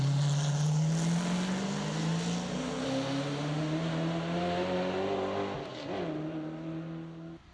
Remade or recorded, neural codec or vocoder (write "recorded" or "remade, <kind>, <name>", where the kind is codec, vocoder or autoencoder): recorded